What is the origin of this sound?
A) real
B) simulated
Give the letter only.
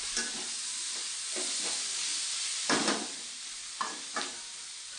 A